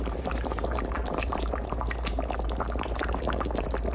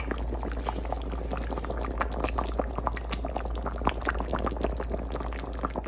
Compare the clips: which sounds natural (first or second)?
second